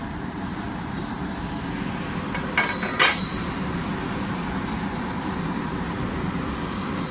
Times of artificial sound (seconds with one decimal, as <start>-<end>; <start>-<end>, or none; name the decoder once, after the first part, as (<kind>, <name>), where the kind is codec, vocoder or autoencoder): 0.0-1.5 (vocoder, BigVGAN v2); 3.3-4.4